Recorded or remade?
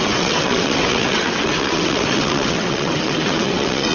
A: remade